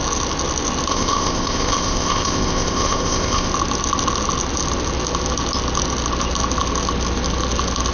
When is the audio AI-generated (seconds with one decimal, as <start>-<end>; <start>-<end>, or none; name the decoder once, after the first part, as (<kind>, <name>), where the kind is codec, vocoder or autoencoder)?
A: 0.9-3.5 (codec, ZipCodec)